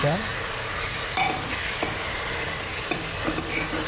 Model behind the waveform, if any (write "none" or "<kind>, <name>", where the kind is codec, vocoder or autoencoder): none